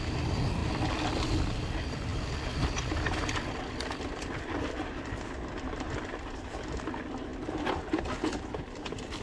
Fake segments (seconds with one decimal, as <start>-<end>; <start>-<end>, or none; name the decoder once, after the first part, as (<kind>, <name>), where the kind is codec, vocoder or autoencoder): none